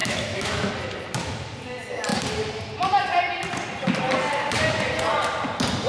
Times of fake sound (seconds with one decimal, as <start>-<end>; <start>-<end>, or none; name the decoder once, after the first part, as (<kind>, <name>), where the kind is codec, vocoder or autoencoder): 0.0-0.7 (autoencoder, DAC-VAE)